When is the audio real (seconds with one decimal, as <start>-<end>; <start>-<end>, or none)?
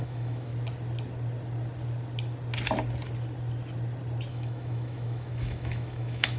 0.5-4.3